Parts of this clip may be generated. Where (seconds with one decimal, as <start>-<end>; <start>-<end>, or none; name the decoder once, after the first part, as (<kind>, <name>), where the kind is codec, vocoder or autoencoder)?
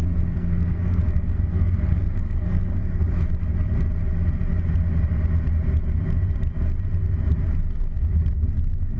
0.0-3.0 (codec, SNAC)